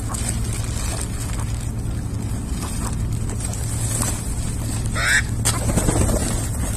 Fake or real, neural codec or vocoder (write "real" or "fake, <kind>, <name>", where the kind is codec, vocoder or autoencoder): real